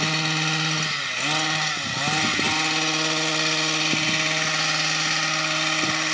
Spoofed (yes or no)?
no